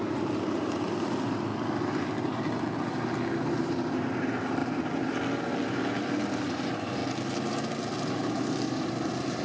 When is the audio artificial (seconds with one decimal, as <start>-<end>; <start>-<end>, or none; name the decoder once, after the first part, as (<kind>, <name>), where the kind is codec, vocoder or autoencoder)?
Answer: 0.0-1.5 (vocoder, BigVGAN v2); 3.5-4.6; 5.7-7.0; 8.1-9.4